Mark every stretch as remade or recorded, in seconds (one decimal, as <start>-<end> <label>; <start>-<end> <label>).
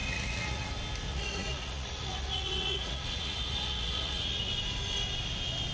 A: 0.0-0.7 remade; 0.7-1.1 recorded; 1.1-4.5 remade; 4.5-5.7 recorded